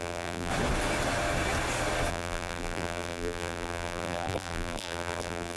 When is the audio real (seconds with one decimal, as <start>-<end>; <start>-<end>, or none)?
0.5-2.1